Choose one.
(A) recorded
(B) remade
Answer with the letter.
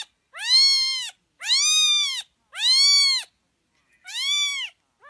A